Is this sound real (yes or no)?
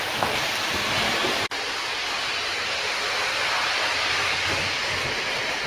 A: yes